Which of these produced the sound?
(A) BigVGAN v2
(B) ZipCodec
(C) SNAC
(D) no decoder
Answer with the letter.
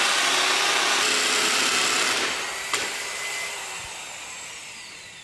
D